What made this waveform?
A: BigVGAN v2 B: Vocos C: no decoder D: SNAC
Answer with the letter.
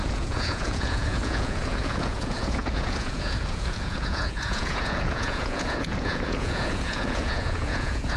B